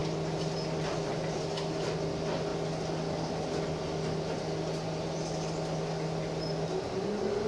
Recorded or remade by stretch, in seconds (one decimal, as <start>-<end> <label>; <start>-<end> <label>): 0.0-7.5 recorded